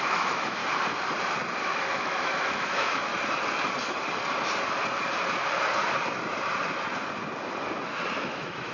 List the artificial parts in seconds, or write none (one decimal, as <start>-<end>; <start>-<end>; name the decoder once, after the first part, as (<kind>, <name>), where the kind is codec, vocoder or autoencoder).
0.0-0.6 (autoencoder, DAC-VAE); 1.6-3.1; 8.2-8.7